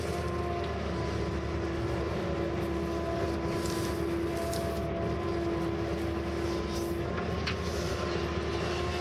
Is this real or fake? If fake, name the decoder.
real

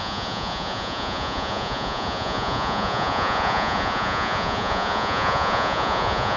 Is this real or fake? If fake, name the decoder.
fake, vocoder, Vocos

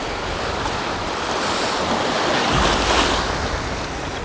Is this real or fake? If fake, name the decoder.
real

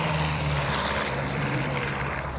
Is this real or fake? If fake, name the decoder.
fake, vocoder, BigVGAN v2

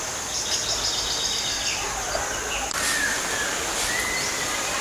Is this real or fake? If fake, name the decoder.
real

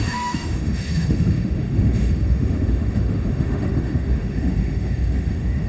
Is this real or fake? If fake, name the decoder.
fake, autoencoder, DAC-VAE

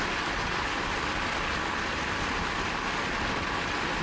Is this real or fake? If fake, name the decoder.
real